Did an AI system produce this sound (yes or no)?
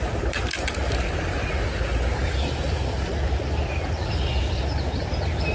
no